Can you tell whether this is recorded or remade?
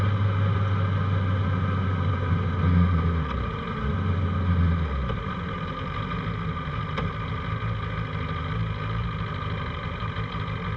recorded